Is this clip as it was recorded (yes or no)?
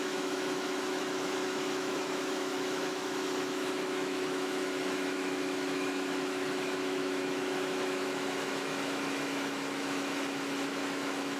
no